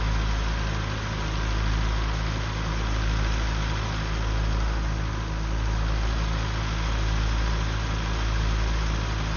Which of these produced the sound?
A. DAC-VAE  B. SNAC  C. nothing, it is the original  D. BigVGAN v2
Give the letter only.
C